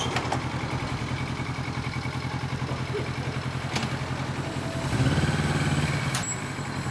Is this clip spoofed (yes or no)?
no